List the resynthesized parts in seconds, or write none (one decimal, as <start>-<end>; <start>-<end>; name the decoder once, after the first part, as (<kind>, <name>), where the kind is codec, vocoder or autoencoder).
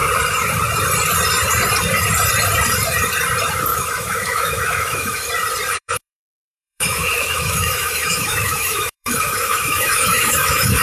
3.7-5.3 (autoencoder, DAC-VAE); 5.7-10.8